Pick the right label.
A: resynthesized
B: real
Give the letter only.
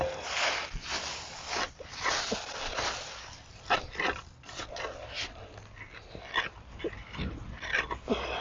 B